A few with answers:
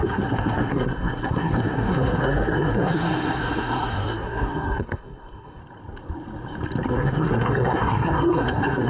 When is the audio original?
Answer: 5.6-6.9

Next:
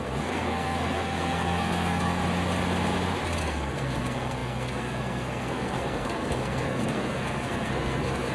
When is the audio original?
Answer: 2.2-3.4

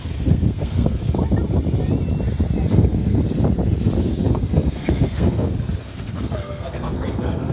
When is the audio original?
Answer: 1.2-2.7; 3.2-4.0

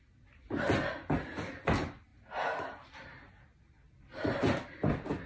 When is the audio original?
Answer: 0.0-5.3

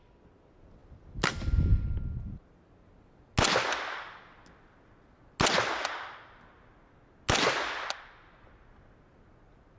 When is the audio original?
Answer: 0.0-9.8

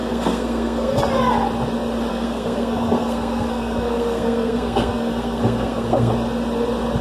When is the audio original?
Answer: 1.0-2.1; 6.1-7.0

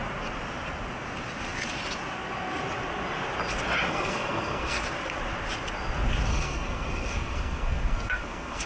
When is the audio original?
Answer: 0.0-3.9; 4.8-6.3